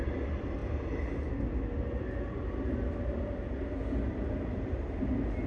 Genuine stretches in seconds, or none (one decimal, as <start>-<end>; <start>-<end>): 0.0-5.5